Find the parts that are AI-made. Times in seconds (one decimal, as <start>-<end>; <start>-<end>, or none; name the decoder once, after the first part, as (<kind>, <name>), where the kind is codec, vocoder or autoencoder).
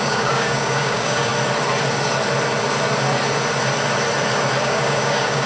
0.0-1.3 (codec, DAC); 4.6-5.5